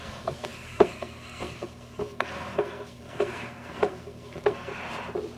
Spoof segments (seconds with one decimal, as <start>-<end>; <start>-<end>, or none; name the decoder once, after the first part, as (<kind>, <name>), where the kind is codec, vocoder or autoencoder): 0.0-4.7 (codec, SNAC)